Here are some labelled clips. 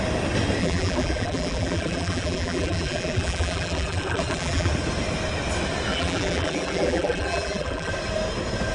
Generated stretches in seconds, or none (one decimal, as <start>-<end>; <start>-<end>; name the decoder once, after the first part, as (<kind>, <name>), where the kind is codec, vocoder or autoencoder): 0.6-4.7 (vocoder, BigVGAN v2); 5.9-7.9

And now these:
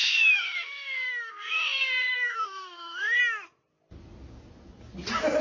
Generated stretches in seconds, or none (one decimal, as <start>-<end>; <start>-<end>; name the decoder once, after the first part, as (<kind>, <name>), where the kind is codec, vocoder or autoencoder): 0.0-3.2 (autoencoder, DAC-VAE)

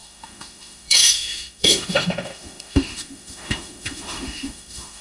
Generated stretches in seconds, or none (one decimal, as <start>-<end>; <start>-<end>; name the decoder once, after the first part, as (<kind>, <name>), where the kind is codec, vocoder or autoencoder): 0.0-5.0 (autoencoder, DAC-VAE)

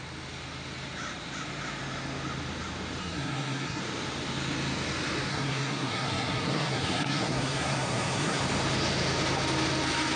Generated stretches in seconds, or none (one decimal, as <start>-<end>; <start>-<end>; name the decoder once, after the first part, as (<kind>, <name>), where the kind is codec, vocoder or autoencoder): 3.0-3.8 (codec, SNAC); 5.3-8.4